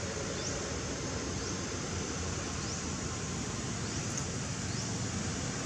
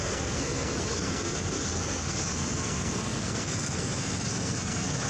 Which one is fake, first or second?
second